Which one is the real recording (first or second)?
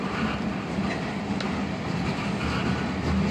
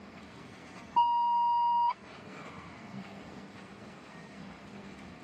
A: first